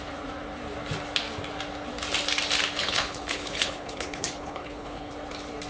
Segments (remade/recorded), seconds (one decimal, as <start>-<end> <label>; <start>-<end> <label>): 0.0-2.8 recorded; 2.8-5.1 remade; 5.1-5.7 recorded